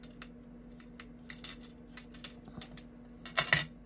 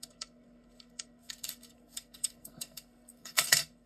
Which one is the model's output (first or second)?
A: second